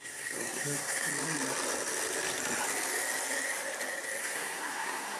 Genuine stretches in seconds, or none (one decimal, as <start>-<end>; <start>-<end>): 1.1-4.2